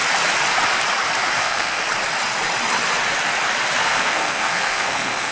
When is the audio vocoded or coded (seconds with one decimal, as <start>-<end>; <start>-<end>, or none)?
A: 1.4-1.8; 3.8-5.3